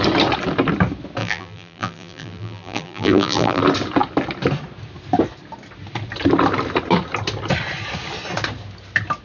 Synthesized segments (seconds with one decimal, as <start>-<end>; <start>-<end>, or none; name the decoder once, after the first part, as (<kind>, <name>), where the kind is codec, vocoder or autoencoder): 1.2-3.6 (vocoder, BigVGAN v2)